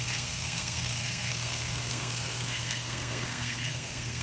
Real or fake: fake